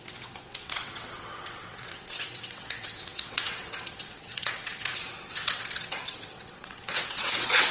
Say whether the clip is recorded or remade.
remade